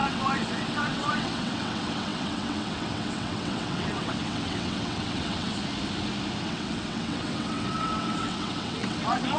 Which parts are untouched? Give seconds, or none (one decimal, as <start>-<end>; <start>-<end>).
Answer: 5.5-6.4